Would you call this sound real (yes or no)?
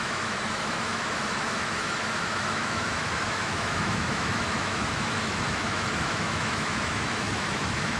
no